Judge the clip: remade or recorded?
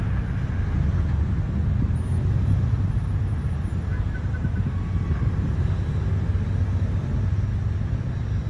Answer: recorded